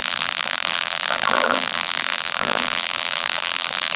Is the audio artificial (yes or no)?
yes